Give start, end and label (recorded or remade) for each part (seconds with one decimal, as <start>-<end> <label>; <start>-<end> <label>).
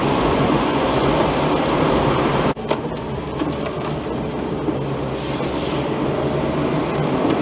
0.0-1.1 remade; 1.1-7.4 recorded